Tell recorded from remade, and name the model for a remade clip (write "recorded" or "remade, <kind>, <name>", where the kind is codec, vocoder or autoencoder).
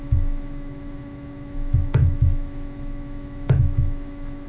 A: remade, autoencoder, DAC-VAE